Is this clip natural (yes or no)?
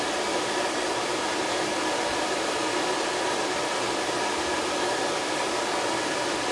yes